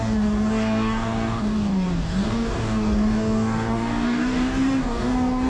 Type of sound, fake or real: fake